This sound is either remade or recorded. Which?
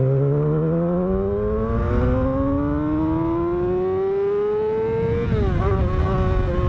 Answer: recorded